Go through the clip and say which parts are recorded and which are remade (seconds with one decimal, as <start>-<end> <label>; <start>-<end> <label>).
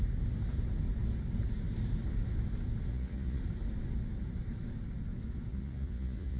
0.0-2.9 recorded; 2.9-3.4 remade; 3.4-5.5 recorded; 5.5-6.4 remade